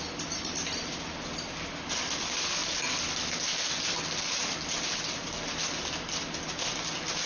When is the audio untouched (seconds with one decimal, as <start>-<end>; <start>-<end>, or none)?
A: 0.0-7.3